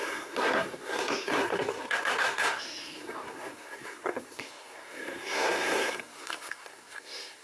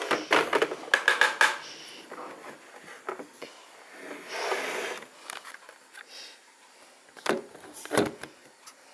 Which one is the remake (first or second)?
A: first